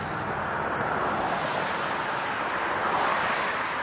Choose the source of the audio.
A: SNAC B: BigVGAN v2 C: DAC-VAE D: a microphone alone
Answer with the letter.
B